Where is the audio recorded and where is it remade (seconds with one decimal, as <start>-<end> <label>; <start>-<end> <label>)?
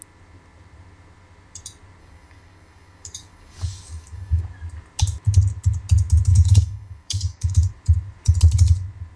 0.0-2.0 recorded; 2.0-4.4 remade; 4.4-6.3 recorded; 6.3-7.7 remade; 7.7-9.2 recorded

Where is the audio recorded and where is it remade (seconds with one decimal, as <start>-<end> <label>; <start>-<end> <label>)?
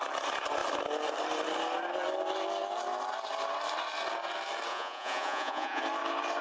0.0-4.7 recorded; 4.7-5.8 remade; 5.8-6.4 recorded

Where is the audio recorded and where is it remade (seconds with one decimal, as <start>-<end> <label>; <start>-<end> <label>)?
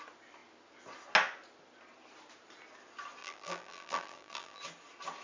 0.0-3.2 recorded; 3.2-4.6 remade; 4.6-5.2 recorded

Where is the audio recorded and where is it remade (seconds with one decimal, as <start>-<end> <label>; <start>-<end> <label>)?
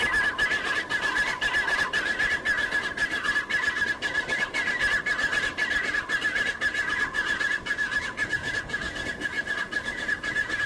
0.0-6.7 recorded; 6.7-10.7 remade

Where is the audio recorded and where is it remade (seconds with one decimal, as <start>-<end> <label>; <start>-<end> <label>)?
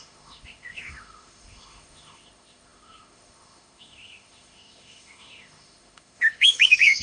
0.0-7.0 remade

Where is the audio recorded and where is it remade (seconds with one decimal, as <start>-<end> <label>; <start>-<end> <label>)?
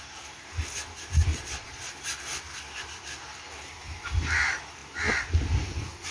0.0-1.3 recorded; 1.3-1.9 remade; 1.9-6.1 recorded